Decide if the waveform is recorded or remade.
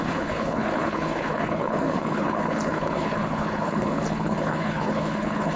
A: remade